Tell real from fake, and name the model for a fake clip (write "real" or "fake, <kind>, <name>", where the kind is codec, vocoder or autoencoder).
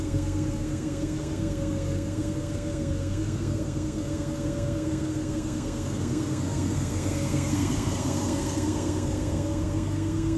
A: fake, codec, SNAC